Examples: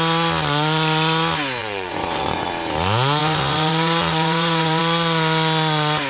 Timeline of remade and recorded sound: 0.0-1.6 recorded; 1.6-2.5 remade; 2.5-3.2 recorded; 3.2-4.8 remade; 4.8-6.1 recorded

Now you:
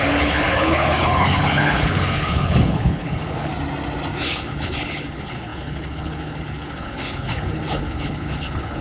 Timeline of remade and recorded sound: 0.0-3.5 remade; 3.5-4.2 recorded; 4.2-8.8 remade

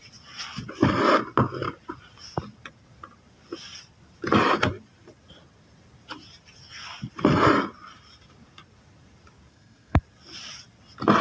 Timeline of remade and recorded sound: 0.0-9.5 recorded; 9.5-10.0 remade; 10.0-11.2 recorded

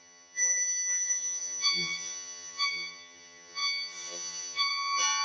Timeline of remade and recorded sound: 0.0-5.2 remade

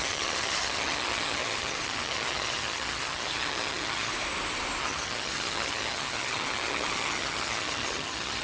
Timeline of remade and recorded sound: 0.0-4.1 remade; 4.1-4.8 recorded; 4.8-8.4 remade